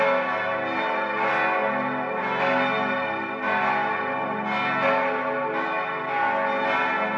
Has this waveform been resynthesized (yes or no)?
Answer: no